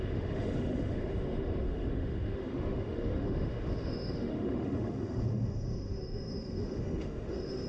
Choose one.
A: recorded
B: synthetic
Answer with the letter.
B